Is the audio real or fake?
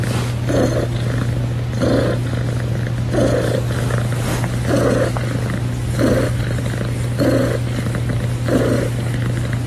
real